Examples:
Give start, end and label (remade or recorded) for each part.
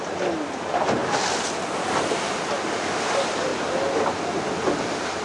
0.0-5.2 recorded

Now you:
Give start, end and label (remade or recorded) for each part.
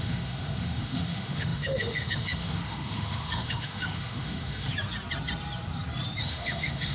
0.0-4.7 remade; 4.7-6.2 recorded; 6.2-6.9 remade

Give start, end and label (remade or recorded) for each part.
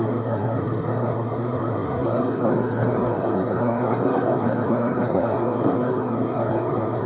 0.0-7.1 remade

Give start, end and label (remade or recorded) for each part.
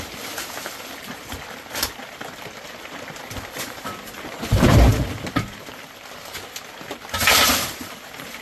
0.0-8.4 recorded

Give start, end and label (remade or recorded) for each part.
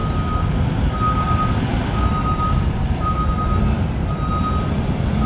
0.0-5.3 recorded